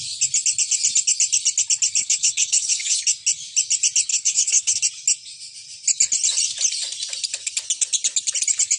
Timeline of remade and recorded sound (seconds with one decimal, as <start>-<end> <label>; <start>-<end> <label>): 0.0-2.0 recorded; 2.0-3.0 remade; 3.0-4.1 recorded; 4.1-4.8 remade; 4.8-8.8 recorded